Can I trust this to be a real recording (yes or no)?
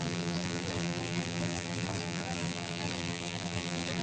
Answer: no